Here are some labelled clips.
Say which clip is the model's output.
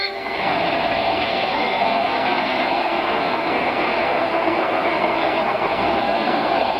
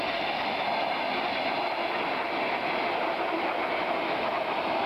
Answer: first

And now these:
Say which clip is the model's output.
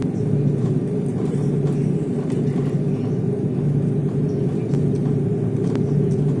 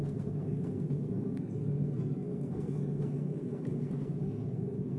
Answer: second